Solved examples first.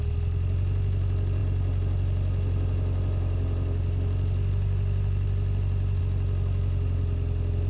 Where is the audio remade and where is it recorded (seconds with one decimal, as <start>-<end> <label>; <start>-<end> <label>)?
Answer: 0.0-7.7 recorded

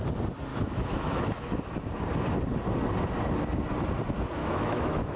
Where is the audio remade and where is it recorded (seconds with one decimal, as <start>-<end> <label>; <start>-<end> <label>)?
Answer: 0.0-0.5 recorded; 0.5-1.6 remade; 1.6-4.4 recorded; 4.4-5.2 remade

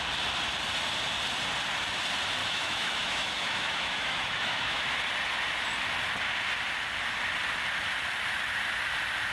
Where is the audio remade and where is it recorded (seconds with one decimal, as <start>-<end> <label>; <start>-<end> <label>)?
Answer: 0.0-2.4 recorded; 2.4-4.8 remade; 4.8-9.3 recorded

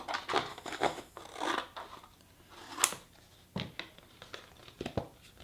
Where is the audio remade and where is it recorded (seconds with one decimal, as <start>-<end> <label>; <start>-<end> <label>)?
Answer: 0.0-0.5 recorded; 0.5-1.2 remade; 1.2-5.4 recorded